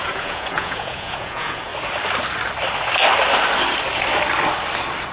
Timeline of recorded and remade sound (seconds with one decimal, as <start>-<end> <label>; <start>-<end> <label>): 0.0-1.7 remade; 1.7-5.1 recorded